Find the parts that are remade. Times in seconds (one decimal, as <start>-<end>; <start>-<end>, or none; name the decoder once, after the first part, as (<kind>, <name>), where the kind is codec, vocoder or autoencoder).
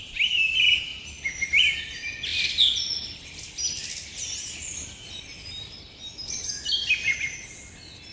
none